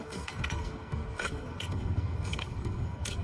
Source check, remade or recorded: remade